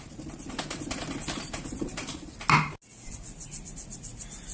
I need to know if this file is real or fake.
real